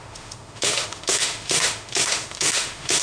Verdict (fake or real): fake